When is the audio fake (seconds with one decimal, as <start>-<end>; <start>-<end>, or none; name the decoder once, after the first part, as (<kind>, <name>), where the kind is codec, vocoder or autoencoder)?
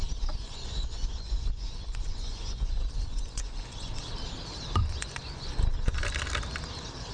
0.4-4.0 (vocoder, Vocos); 4.8-5.5